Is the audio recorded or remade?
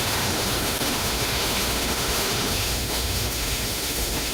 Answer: remade